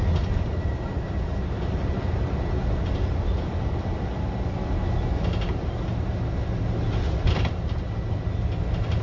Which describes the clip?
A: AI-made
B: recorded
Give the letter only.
B